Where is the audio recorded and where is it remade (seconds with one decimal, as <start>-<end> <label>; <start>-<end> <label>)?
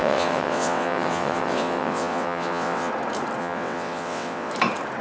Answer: 0.0-2.9 remade; 2.9-3.4 recorded; 3.4-4.5 remade; 4.5-5.0 recorded